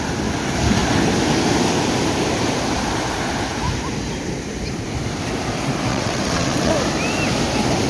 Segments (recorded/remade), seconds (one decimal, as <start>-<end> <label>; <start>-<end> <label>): 0.0-5.9 recorded; 5.9-6.7 remade; 6.7-7.9 recorded